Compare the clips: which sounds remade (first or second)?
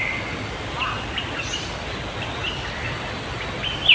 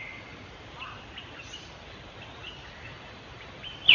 second